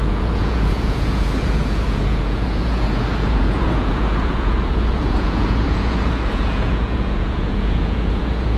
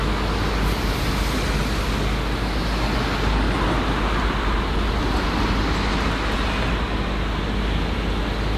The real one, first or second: second